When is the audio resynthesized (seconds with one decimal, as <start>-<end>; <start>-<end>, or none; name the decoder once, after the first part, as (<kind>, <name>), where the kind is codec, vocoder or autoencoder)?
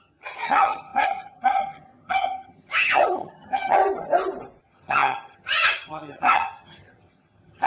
0.0-3.8 (vocoder, HiFi-GAN); 4.6-7.7